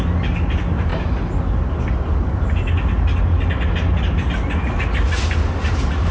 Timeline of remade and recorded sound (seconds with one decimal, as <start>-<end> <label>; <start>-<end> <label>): 0.0-6.1 recorded